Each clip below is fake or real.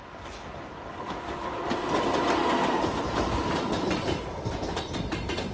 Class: real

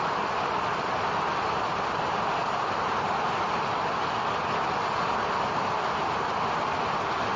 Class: real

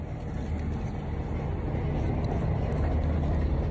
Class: real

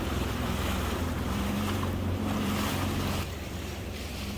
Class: fake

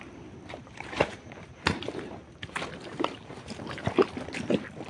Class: fake